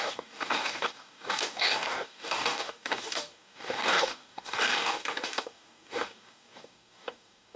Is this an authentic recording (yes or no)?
no